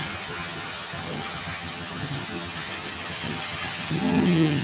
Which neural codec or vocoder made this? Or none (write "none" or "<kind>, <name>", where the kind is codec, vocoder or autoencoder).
vocoder, HiFi-GAN